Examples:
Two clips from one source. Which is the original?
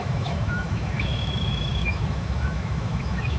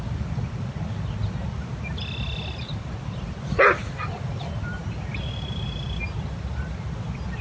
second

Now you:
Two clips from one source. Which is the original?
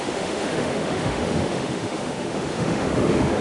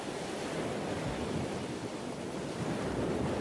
second